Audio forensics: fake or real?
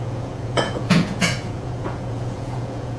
fake